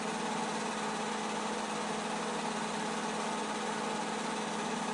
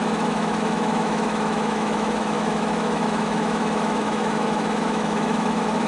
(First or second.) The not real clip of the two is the second